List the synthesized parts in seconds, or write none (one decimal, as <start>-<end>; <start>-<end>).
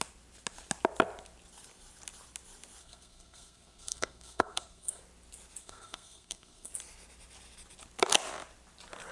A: 2.8-5.0; 5.6-6.7